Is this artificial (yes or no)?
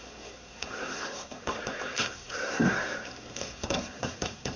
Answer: yes